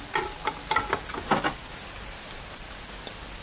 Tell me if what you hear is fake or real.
real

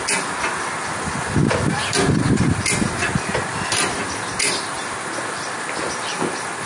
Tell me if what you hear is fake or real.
real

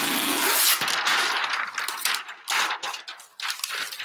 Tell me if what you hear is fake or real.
real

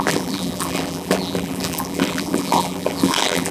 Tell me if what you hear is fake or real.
fake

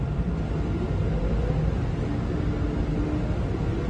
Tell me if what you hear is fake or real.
real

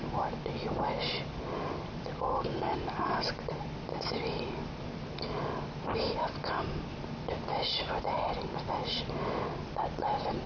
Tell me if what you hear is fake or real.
fake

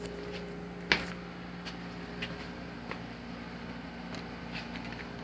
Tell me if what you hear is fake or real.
real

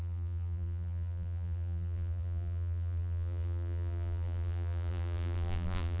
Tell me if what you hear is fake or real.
fake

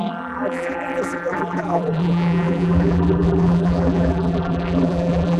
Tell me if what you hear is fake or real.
fake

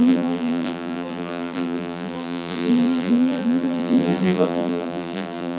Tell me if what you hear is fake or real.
fake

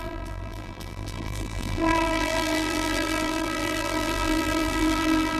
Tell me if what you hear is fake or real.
fake